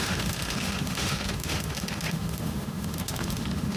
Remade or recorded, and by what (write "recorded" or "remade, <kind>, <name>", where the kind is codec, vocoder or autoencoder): remade, autoencoder, DAC-VAE